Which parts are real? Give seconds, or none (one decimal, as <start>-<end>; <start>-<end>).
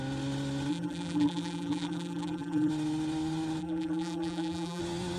0.0-0.7; 2.7-3.6; 4.8-5.2